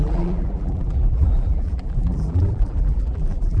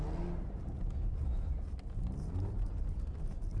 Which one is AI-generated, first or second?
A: first